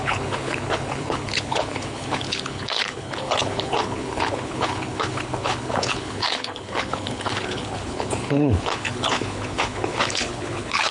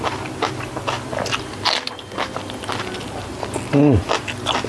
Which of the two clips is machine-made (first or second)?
first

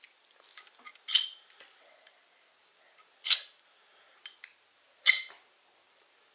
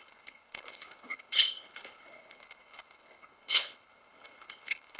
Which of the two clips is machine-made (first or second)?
second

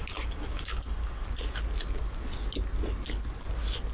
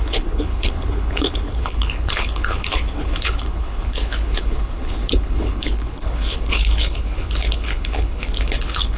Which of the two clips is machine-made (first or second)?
second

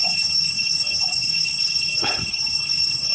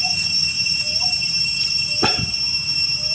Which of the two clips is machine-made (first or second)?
first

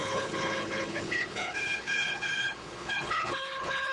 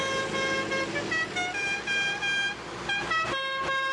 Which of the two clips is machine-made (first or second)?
first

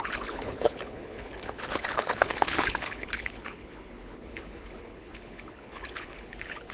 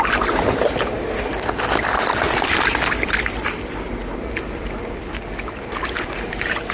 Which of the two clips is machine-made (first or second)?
first